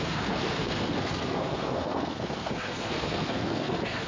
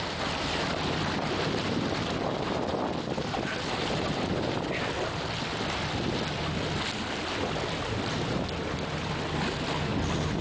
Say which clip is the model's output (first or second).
first